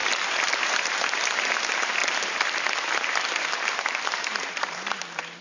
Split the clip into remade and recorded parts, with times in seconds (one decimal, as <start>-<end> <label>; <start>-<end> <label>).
0.0-0.5 recorded; 0.5-2.0 remade; 2.0-3.7 recorded; 3.7-5.4 remade